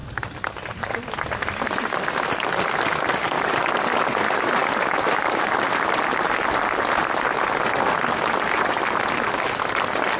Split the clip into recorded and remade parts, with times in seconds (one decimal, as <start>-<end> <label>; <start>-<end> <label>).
0.0-10.2 recorded